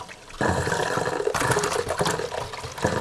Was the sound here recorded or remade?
recorded